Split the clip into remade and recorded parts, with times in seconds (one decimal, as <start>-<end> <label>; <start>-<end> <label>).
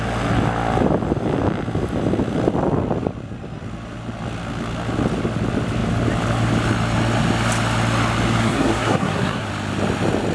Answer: 0.0-8.4 recorded; 8.4-9.5 remade; 9.5-10.3 recorded